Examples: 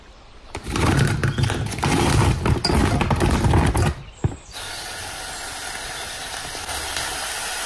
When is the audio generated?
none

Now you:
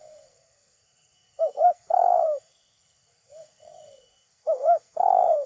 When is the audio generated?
0.0-5.5 (codec, SNAC)

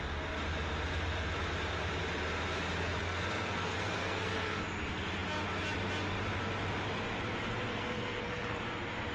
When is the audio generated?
3.0-4.6 (codec, SNAC); 7.7-8.6

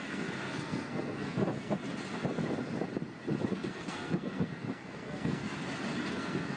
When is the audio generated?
0.0-1.8 (codec, SNAC); 3.5-5.4; 6.1-6.6

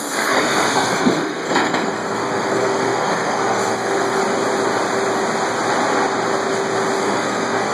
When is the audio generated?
0.0-4.2 (codec, SNAC); 7.0-7.7

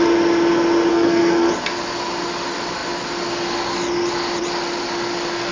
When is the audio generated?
0.9-1.5 (codec, SNAC)

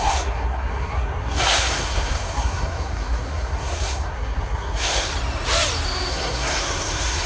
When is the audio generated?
0.0-5.1 (codec, SNAC); 6.1-7.3